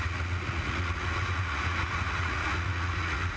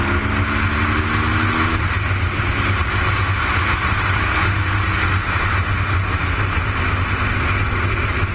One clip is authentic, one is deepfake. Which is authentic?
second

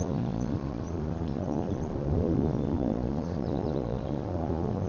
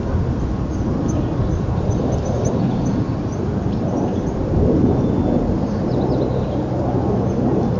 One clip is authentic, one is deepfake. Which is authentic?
second